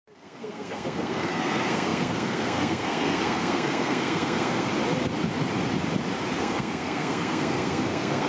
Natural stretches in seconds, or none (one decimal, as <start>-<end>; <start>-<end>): 4.7-6.4